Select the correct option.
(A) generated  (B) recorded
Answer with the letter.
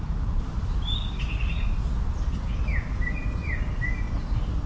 B